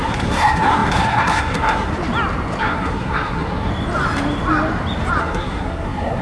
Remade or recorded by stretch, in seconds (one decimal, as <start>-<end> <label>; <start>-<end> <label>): 0.0-1.9 remade; 1.9-2.6 recorded; 2.6-3.7 remade; 3.7-5.2 recorded; 5.2-6.2 remade